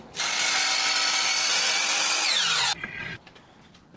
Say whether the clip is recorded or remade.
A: recorded